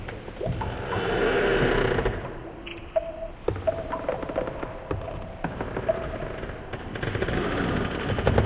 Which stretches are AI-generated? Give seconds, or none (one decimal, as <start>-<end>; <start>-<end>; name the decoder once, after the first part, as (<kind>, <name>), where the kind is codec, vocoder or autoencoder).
none

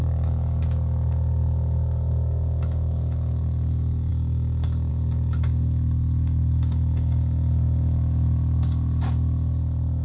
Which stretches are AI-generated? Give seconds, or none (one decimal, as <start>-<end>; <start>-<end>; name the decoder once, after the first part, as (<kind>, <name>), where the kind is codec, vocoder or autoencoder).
0.0-10.0 (codec, DAC)

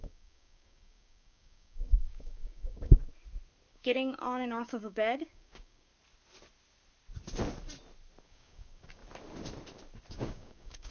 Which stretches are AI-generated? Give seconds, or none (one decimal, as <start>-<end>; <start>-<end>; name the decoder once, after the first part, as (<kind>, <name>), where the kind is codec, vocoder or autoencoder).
0.0-3.0 (codec, DAC); 3.7-5.9; 8.2-9.0; 10.1-10.9

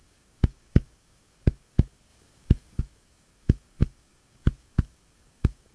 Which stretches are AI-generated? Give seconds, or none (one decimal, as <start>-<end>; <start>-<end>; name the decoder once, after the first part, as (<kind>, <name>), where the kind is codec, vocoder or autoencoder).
0.0-5.7 (codec, DAC)